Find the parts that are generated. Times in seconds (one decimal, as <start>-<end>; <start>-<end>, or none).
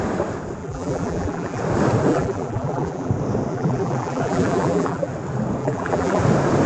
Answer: 0.6-1.6; 2.1-3.1; 3.5-5.1; 5.6-6.2